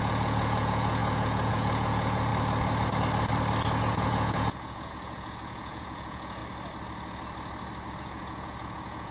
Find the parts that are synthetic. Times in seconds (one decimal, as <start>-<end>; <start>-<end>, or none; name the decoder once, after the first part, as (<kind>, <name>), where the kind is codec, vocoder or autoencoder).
0.0-2.3 (vocoder, Vocos); 3.8-6.4; 8.0-9.1